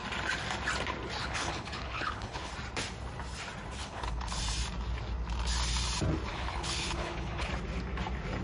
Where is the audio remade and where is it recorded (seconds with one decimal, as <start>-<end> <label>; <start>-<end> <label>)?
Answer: 0.0-1.2 recorded; 1.2-2.5 remade; 2.5-3.8 recorded; 3.8-4.4 remade; 4.4-6.3 recorded; 6.3-7.5 remade; 7.5-8.4 recorded